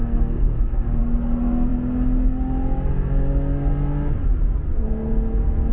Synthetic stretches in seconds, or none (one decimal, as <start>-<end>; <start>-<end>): 0.0-1.0